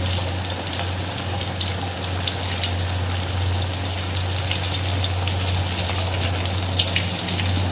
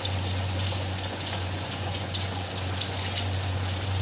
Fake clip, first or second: second